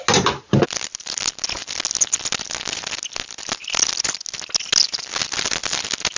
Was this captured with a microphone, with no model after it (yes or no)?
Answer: yes